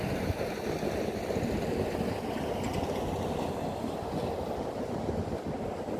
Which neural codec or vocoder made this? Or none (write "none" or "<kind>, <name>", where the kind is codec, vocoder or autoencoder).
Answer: none